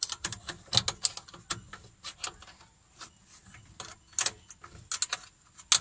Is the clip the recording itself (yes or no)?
yes